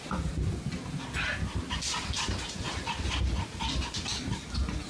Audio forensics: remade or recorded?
recorded